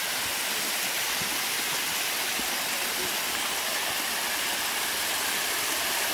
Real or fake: real